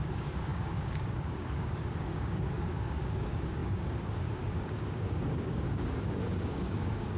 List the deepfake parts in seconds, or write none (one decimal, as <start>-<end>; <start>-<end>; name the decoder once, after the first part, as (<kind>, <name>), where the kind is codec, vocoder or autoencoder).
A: 0.0-7.2 (codec, DAC)